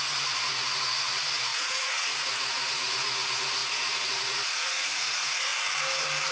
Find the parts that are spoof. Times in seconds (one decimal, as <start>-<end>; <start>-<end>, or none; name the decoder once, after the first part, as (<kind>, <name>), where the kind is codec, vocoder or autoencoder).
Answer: 0.0-5.5 (vocoder, Vocos)